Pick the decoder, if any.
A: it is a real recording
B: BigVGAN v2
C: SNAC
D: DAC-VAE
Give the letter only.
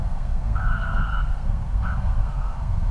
C